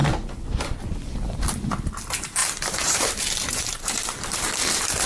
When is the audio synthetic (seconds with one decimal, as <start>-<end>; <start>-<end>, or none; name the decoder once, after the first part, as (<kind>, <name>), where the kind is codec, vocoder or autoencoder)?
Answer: 2.0-5.1 (vocoder, BigVGAN v2)